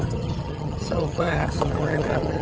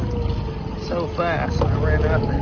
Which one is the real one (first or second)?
second